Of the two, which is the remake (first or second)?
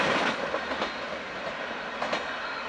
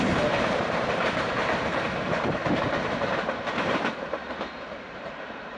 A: second